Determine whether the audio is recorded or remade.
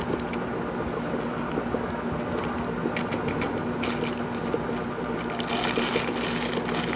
recorded